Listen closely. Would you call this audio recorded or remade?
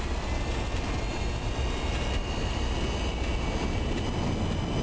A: recorded